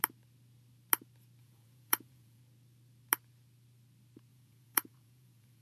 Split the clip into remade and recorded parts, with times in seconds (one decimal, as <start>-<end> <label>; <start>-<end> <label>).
0.0-1.4 recorded; 1.4-2.4 remade; 2.4-4.3 recorded; 4.3-5.6 remade